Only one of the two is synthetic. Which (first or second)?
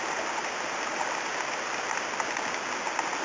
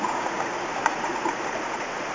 second